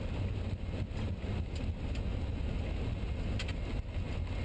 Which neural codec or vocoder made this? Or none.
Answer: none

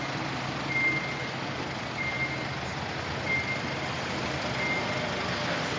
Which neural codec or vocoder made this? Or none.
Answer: none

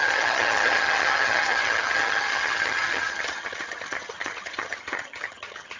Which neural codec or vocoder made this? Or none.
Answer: vocoder, HiFi-GAN